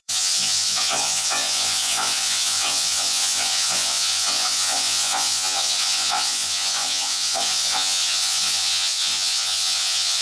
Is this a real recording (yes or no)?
no